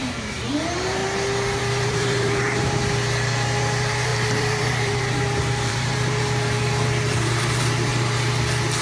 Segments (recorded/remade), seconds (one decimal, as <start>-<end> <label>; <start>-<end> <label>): 0.0-1.0 remade; 1.0-1.6 recorded; 1.6-2.8 remade; 2.8-3.6 recorded; 3.6-7.9 remade; 7.9-8.8 recorded